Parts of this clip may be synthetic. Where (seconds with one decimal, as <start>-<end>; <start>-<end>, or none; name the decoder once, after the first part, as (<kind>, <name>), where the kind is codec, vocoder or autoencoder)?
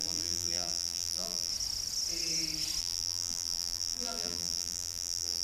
0.0-1.5 (vocoder, BigVGAN v2); 2.8-5.4